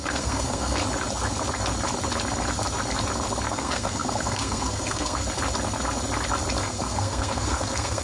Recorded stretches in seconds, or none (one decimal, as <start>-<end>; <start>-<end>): 0.8-3.5; 5.2-6.6